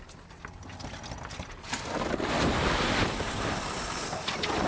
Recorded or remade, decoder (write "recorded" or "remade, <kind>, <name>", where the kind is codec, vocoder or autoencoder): recorded